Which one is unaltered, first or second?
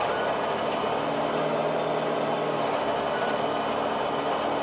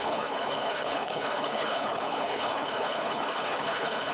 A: first